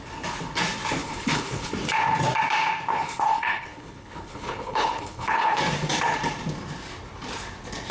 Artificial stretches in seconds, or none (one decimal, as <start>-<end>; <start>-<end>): 1.0-1.7; 2.9-5.6